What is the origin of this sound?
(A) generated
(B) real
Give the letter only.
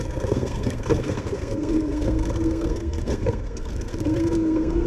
A